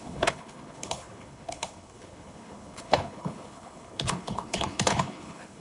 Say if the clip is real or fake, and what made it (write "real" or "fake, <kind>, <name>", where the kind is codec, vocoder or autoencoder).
fake, codec, HILCodec